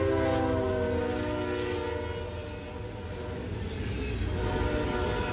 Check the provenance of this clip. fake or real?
real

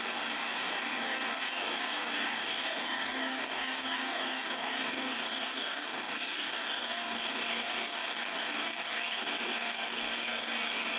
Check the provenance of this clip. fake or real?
fake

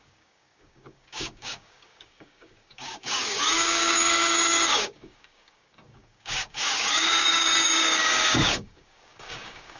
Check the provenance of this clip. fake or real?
fake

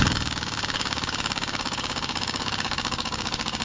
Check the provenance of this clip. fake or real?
fake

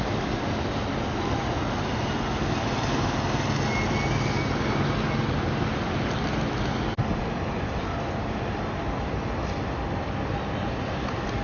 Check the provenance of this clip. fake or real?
real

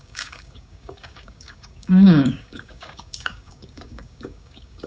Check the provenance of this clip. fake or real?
fake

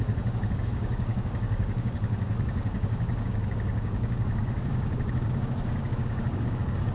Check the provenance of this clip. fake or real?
fake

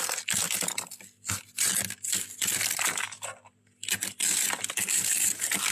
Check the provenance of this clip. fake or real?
real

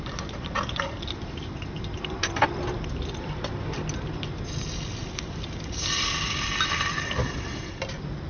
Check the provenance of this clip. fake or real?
real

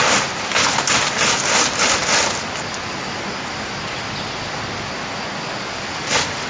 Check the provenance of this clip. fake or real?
real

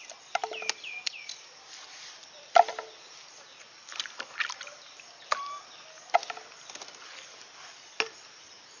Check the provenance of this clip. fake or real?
real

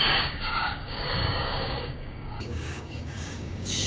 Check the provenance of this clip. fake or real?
fake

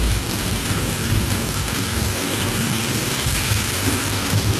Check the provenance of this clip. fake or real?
fake